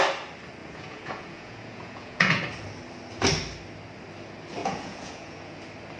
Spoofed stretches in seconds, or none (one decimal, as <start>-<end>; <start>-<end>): 0.6-2.4; 4.6-5.6